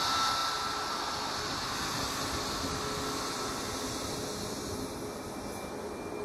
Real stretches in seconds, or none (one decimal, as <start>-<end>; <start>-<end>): 0.0-6.2